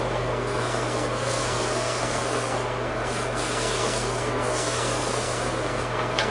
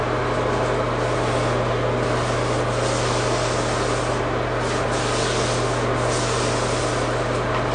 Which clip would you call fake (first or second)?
first